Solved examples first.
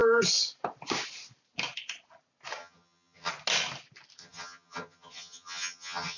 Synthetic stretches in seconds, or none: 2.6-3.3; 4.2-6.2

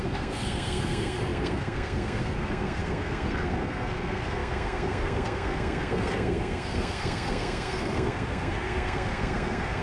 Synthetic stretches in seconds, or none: 0.0-9.8

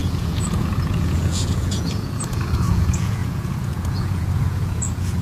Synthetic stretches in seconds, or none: 0.0-5.2